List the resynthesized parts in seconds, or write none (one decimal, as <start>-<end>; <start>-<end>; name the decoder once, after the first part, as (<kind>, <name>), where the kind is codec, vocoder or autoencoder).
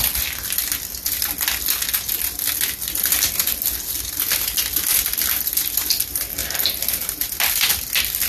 none